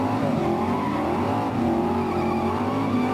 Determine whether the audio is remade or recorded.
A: recorded